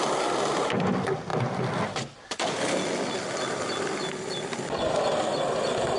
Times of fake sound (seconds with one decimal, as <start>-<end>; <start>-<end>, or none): none